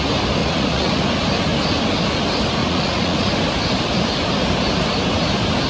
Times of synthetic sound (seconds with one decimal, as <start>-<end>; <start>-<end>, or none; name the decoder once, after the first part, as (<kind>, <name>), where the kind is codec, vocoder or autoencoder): 0.4-1.0 (vocoder, Vocos); 2.6-3.3